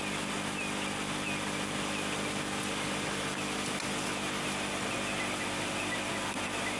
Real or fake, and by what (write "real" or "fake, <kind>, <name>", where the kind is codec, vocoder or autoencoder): real